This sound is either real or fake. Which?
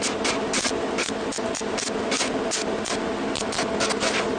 real